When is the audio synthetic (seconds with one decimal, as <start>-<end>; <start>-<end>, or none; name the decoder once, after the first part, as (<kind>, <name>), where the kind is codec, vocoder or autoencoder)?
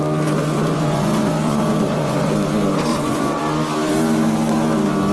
0.4-2.3 (vocoder, Vocos); 2.9-3.4